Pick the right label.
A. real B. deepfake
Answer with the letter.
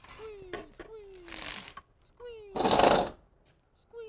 A